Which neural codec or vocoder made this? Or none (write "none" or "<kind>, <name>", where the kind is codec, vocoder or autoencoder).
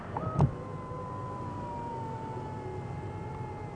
none